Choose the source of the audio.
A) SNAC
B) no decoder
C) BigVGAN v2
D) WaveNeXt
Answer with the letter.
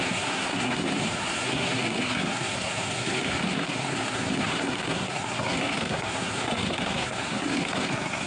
A